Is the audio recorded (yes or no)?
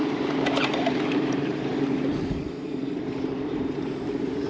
no